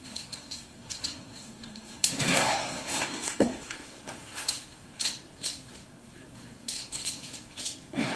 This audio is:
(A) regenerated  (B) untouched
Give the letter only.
A